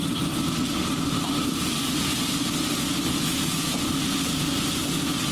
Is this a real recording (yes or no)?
yes